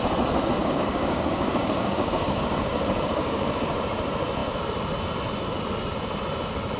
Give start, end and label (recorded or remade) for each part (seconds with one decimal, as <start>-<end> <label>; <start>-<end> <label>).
0.0-0.6 recorded; 0.6-3.6 remade; 3.6-6.8 recorded